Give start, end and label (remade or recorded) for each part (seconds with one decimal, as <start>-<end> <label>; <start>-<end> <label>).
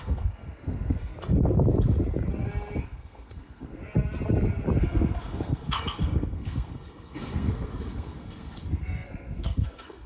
0.0-1.1 remade; 1.1-2.8 recorded; 2.8-3.8 remade; 3.8-4.8 recorded; 4.8-10.1 remade